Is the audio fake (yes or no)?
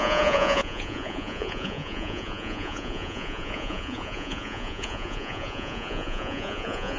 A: yes